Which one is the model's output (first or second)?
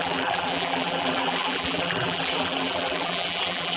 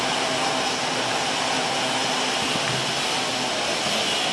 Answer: first